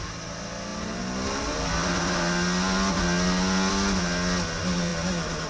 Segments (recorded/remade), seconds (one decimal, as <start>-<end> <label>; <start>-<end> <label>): 0.0-5.5 recorded